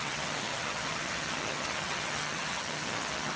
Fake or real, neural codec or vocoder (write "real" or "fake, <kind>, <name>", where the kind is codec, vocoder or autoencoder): fake, vocoder, HiFi-GAN